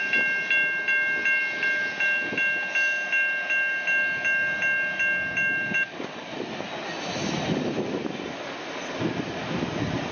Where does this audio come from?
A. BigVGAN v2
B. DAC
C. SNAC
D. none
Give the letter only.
D